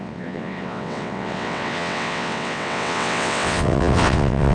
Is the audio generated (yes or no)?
yes